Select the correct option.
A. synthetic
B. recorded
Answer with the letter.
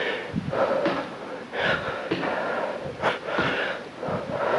B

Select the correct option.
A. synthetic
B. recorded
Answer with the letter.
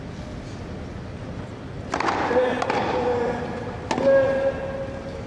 B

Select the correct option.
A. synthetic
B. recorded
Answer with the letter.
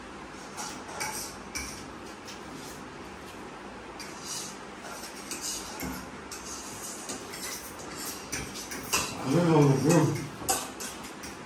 B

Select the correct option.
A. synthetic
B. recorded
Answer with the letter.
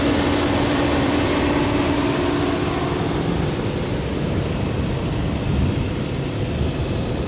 B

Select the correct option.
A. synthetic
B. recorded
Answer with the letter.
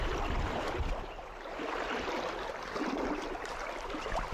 A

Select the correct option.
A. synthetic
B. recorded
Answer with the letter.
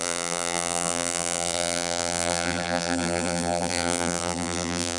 A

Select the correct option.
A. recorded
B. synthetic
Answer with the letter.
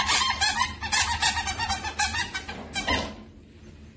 A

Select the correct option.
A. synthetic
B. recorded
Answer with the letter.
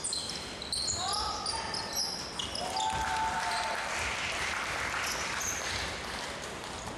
B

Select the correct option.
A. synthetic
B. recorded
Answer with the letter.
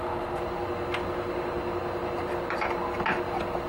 B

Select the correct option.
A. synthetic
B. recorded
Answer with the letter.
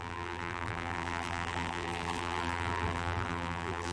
A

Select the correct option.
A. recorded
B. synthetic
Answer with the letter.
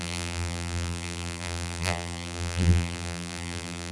B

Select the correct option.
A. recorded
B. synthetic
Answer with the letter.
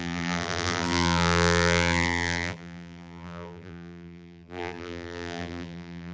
B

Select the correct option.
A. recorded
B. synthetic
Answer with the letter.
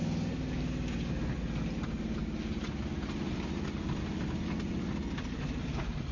A